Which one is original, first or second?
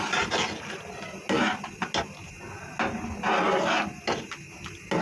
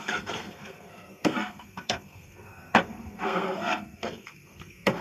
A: first